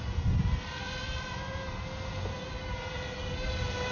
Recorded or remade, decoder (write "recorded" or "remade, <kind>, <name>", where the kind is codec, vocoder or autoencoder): recorded